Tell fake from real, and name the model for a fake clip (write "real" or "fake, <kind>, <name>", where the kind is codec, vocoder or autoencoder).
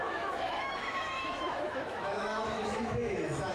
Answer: fake, autoencoder, DAC-VAE